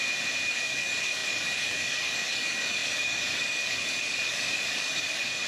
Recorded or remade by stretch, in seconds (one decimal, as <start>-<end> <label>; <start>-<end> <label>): 0.0-0.5 recorded; 0.5-5.5 remade

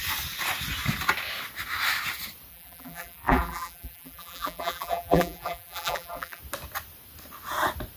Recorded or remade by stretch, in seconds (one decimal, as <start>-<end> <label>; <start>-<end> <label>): 0.0-2.5 recorded; 2.5-6.4 remade; 6.4-8.0 recorded

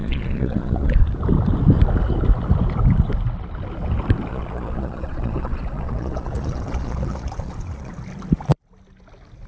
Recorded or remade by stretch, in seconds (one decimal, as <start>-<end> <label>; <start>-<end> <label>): 0.0-1.0 remade; 1.0-4.3 recorded; 4.3-7.9 remade; 7.9-9.5 recorded